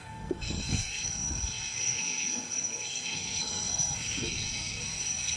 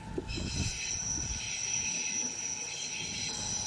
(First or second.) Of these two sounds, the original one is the second